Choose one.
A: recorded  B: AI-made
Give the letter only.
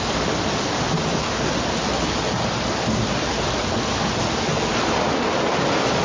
A